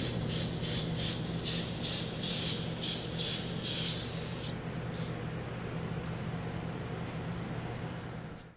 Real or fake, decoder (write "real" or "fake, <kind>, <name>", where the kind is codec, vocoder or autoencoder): real